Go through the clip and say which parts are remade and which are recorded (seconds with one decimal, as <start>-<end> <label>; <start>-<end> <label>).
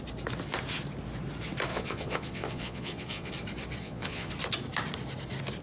0.0-1.7 recorded; 1.7-3.3 remade; 3.3-3.8 recorded; 3.8-4.3 remade; 4.3-5.6 recorded